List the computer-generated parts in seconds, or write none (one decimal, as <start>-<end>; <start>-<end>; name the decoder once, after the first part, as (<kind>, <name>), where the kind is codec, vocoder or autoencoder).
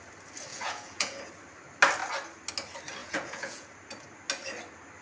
0.5-1.2 (vocoder, Vocos); 3.0-3.7